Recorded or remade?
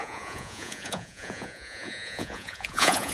remade